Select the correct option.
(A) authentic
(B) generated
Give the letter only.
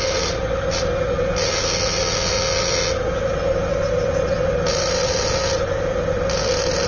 A